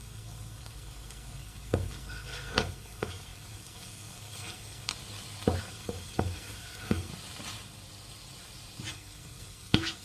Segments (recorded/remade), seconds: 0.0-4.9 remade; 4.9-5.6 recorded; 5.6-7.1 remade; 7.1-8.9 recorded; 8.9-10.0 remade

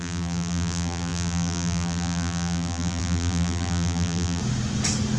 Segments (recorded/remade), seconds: 0.0-4.4 remade; 4.4-5.2 recorded

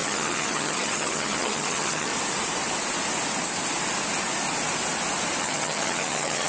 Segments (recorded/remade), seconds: 0.0-2.1 remade; 2.1-5.4 recorded; 5.4-6.5 remade

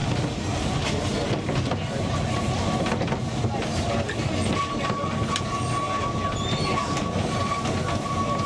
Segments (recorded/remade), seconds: 0.0-8.5 recorded

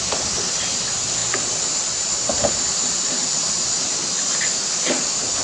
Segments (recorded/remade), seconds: 0.0-5.4 recorded